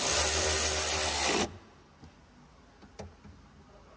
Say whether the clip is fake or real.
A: real